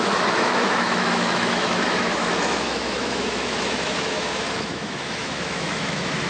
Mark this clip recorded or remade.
remade